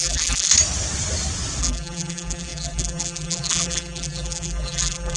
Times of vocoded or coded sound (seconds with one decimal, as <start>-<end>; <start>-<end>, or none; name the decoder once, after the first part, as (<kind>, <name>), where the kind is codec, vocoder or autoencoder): 0.0-0.5 (vocoder, BigVGAN v2); 1.6-5.2